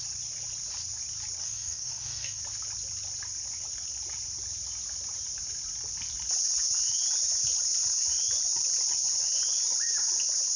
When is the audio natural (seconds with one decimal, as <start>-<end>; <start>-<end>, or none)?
0.0-1.4; 2.4-10.6

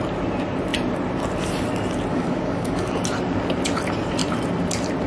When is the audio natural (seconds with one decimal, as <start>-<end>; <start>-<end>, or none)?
0.0-2.1; 3.0-5.1

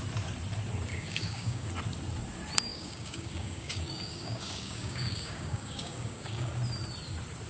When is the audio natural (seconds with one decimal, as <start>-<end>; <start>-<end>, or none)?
0.0-0.9; 1.7-2.7; 6.5-7.5